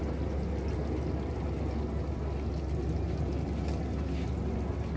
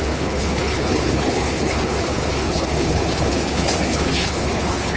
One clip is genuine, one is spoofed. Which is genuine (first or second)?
first